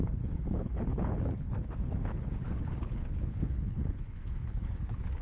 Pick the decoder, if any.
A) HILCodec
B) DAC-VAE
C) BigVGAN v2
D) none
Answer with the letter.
A